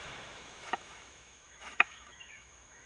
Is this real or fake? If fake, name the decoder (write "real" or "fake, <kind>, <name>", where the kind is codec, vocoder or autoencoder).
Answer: fake, autoencoder, DAC-VAE